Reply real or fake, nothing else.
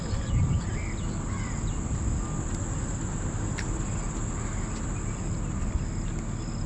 real